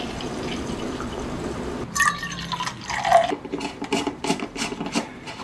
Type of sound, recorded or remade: recorded